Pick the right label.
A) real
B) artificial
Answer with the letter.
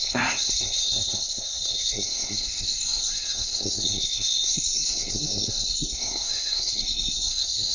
B